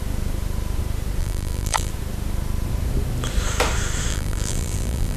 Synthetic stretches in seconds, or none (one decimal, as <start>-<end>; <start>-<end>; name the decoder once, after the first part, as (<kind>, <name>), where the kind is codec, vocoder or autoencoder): 1.2-1.9 (vocoder, BigVGAN v2); 4.1-5.2